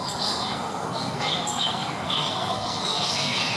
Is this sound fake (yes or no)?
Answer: yes